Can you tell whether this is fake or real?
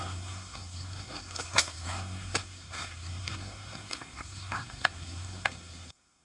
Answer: fake